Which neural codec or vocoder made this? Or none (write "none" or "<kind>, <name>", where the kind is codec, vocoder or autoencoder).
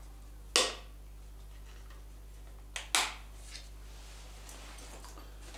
none